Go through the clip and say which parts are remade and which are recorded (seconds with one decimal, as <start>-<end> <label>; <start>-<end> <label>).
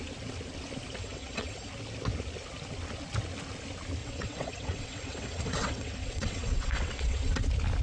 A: 0.0-1.0 recorded; 1.0-1.7 remade; 1.7-4.0 recorded; 4.0-7.3 remade; 7.3-7.8 recorded